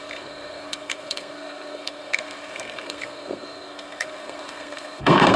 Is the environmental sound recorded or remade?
remade